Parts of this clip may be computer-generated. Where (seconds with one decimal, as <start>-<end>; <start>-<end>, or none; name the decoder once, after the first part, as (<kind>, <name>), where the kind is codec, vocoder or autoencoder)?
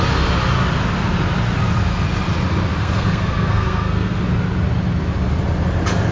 2.8-4.2 (codec, SNAC)